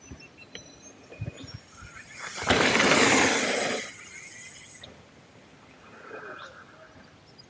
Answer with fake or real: real